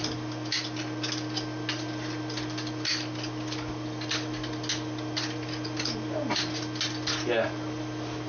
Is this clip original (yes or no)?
yes